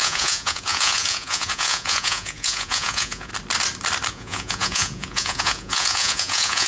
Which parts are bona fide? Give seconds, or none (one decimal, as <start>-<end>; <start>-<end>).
3.3-4.1